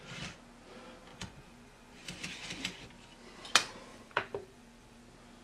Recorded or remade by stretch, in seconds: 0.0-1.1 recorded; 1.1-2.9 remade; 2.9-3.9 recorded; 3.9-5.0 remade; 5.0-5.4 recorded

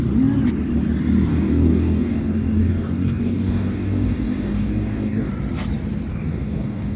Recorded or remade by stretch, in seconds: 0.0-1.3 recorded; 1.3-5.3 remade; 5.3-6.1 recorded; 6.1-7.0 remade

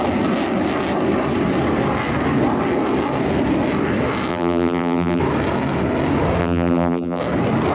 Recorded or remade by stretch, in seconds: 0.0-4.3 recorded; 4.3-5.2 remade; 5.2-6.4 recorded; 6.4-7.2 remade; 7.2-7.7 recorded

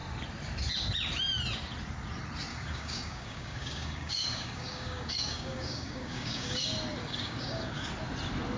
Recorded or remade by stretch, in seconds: 0.0-2.5 recorded; 2.5-6.6 remade; 6.6-7.0 recorded; 7.0-7.9 remade; 7.9-8.6 recorded

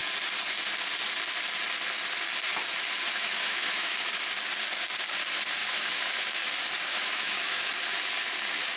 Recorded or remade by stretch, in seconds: 0.0-3.1 recorded; 3.1-4.1 remade; 4.1-5.6 recorded; 5.6-6.4 remade; 6.4-6.9 recorded; 6.9-7.7 remade; 7.7-8.8 recorded